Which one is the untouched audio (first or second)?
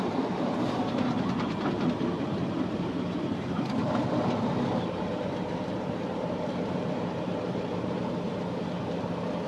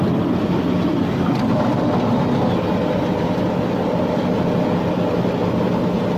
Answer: second